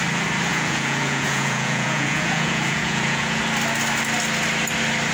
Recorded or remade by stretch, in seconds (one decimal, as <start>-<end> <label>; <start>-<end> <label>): 0.0-0.5 recorded; 0.5-3.4 remade; 3.4-5.1 recorded